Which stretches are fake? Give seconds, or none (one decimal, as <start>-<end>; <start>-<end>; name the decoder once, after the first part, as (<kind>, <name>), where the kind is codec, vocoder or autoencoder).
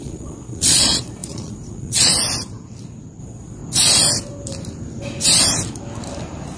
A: 0.0-2.1 (vocoder, Vocos); 3.2-3.6